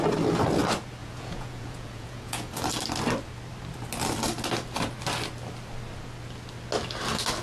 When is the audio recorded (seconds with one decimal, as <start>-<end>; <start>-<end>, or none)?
0.0-1.0; 2.5-7.4